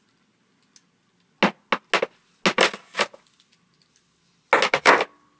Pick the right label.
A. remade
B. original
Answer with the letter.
B